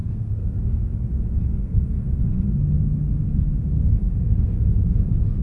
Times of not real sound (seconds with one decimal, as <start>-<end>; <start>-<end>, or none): 0.0-0.8; 1.6-2.4; 4.0-4.6